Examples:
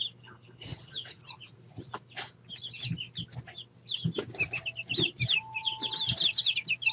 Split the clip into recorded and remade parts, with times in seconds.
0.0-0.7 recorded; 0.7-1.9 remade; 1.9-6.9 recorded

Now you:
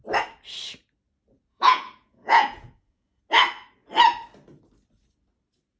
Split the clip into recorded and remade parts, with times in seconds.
0.0-1.5 recorded; 1.5-3.2 remade; 3.2-5.8 recorded

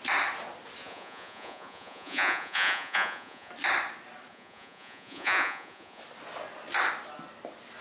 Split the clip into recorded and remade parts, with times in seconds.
0.0-0.8 recorded; 0.8-3.5 remade; 3.5-4.3 recorded; 4.3-6.0 remade; 6.0-7.8 recorded

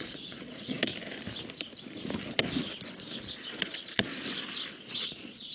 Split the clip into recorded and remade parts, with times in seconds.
0.0-0.9 remade; 0.9-3.2 recorded; 3.2-4.1 remade; 4.1-4.9 recorded; 4.9-5.5 remade